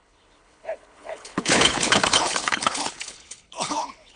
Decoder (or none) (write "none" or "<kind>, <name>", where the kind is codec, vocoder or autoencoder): codec, HILCodec